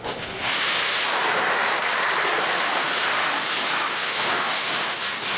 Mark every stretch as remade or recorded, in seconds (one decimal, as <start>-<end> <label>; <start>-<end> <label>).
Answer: 0.0-1.7 remade; 1.7-2.6 recorded; 2.6-5.4 remade